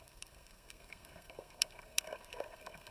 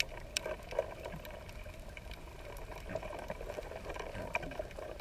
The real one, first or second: second